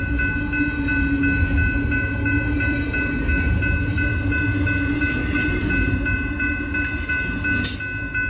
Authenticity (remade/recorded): recorded